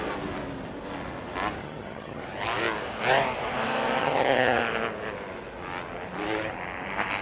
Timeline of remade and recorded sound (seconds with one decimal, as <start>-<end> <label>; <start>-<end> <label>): 0.0-1.6 recorded; 1.6-2.2 remade; 2.2-4.0 recorded; 4.0-4.6 remade; 4.6-7.2 recorded